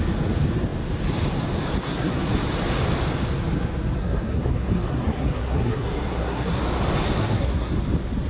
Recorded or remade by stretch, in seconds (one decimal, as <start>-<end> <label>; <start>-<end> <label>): 0.0-1.8 recorded; 1.8-2.3 remade; 2.3-4.0 recorded; 4.0-6.6 remade; 6.6-7.2 recorded; 7.2-7.7 remade; 7.7-8.3 recorded